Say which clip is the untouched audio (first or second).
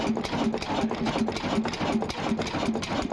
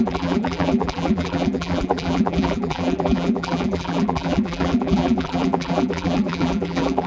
first